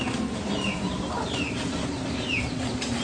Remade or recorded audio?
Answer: recorded